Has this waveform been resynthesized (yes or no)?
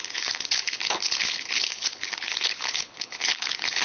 yes